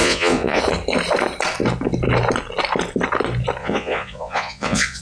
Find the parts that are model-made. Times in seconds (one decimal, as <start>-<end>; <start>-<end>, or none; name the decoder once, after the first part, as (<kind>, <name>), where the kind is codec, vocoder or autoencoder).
0.0-0.6 (vocoder, Vocos); 3.6-5.0